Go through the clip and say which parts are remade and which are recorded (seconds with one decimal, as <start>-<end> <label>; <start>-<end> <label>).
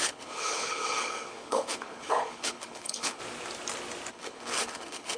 0.0-3.2 remade; 3.2-4.1 recorded; 4.1-5.2 remade